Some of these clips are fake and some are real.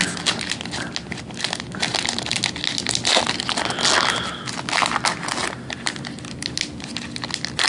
real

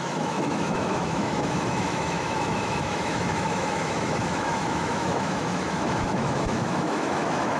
fake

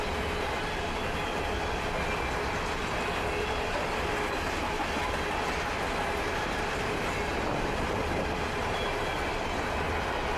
real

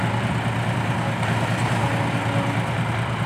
real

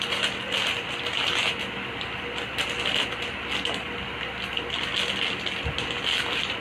real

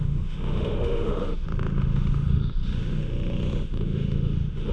fake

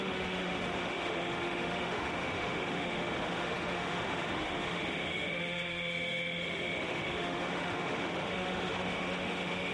fake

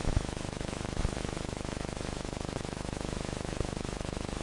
fake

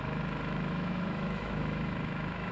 fake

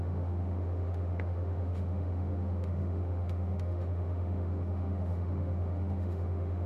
fake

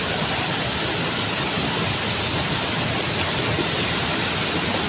real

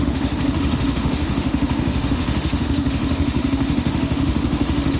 fake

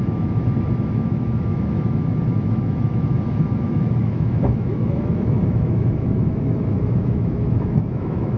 fake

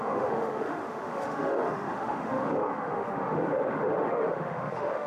fake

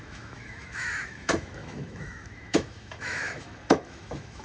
fake